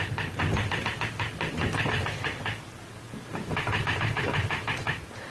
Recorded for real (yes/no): yes